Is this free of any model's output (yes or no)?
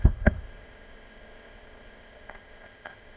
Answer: no